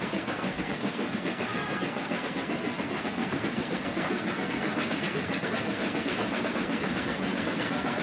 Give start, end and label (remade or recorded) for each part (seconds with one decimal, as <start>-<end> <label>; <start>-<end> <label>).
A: 0.0-8.0 remade